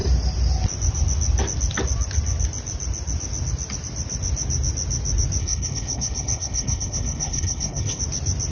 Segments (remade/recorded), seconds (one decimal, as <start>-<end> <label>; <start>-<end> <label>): 0.0-5.4 recorded; 5.4-8.0 remade; 8.0-8.5 recorded